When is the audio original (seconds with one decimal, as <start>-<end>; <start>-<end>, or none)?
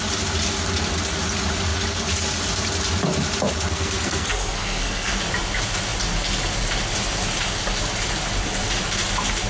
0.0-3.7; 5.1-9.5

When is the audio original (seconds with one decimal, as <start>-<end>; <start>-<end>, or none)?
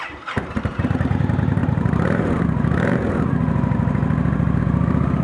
none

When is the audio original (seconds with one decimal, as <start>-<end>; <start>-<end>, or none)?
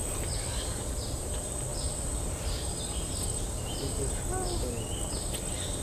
0.0-5.8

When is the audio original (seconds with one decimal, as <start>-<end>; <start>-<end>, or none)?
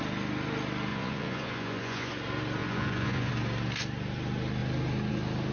0.0-0.9; 2.1-2.6; 3.3-5.5